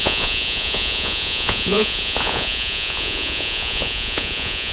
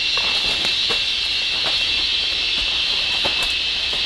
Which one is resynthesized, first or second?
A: first